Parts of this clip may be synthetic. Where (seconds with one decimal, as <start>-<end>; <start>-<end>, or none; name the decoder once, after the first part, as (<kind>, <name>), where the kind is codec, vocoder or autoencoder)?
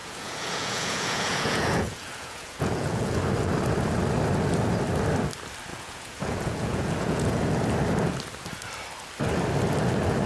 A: 0.0-3.2 (vocoder, Vocos); 5.7-7.4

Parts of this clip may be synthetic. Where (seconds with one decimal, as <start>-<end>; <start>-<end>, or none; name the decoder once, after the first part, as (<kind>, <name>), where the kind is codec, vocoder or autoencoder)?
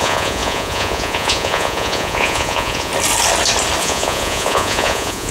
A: 0.0-2.9 (vocoder, Vocos); 3.8-5.3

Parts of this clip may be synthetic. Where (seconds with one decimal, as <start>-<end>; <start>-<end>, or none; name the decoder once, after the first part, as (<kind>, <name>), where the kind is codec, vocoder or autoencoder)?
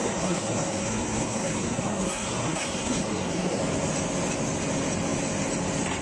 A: 0.0-3.6 (codec, SNAC)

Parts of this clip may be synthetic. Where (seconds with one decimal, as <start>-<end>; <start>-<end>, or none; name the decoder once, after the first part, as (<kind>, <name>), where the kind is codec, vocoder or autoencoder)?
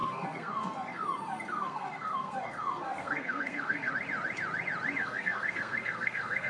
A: 0.0-3.9 (codec, SNAC); 5.0-6.5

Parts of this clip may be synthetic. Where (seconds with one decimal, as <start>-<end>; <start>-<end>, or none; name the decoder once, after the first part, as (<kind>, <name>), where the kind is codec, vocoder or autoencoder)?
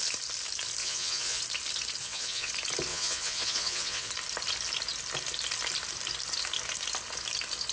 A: 0.8-1.4 (vocoder, Vocos); 2.0-2.5; 2.9-4.1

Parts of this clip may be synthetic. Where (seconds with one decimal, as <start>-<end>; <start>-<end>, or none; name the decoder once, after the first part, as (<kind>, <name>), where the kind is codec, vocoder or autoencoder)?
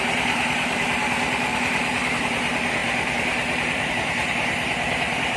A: 0.0-5.4 (vocoder, BigVGAN v2)